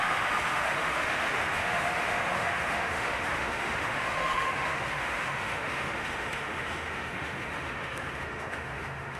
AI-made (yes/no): yes